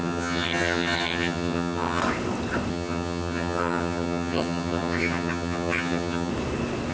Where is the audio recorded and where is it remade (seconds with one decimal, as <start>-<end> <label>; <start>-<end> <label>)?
0.0-2.0 remade; 2.0-2.7 recorded; 2.7-6.3 remade; 6.3-6.9 recorded